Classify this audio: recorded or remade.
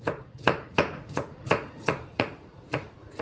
remade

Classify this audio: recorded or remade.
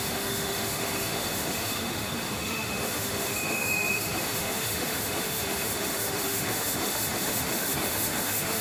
remade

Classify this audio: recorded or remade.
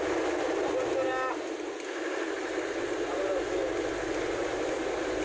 recorded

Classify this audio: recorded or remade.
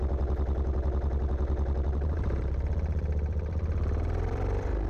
remade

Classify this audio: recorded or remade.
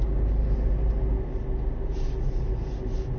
recorded